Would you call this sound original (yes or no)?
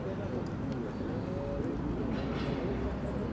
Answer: yes